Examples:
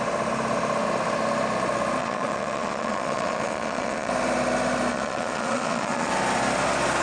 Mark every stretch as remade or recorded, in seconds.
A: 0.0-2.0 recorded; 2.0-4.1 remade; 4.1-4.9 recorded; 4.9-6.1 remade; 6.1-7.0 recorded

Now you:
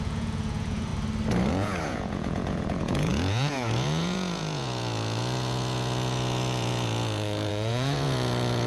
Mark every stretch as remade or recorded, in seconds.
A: 0.0-0.9 remade; 0.9-1.5 recorded; 1.5-8.7 remade

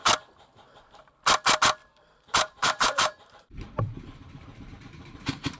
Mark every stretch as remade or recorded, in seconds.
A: 0.0-1.8 recorded; 1.8-5.6 remade

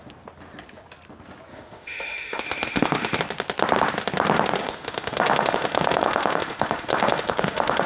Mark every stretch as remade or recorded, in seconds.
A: 0.0-1.5 recorded; 1.5-3.2 remade; 3.2-4.6 recorded; 4.6-7.9 remade